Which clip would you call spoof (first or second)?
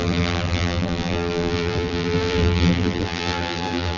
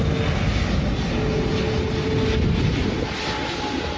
first